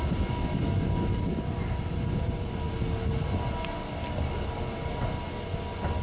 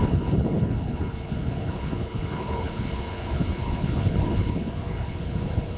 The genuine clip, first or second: first